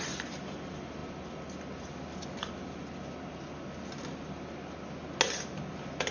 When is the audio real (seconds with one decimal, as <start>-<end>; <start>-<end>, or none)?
0.0-6.1